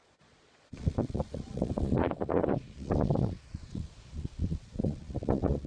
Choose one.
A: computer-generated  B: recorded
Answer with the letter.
A